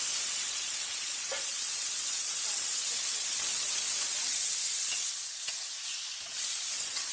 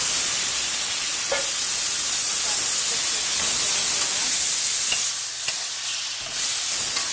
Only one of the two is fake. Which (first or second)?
first